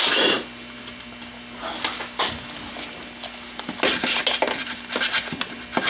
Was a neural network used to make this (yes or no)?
no